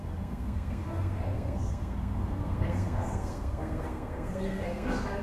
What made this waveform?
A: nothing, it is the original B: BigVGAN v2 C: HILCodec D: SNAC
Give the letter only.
D